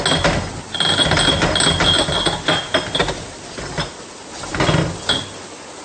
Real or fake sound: real